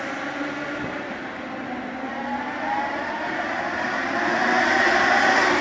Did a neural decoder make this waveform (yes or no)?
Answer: no